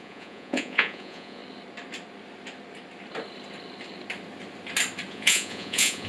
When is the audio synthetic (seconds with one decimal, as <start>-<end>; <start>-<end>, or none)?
0.0-1.4; 5.1-6.1